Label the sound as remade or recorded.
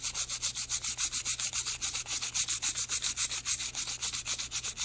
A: recorded